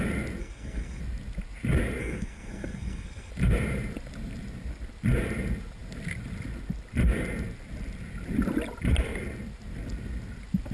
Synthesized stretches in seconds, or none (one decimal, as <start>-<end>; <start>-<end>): 0.4-1.0; 2.0-3.3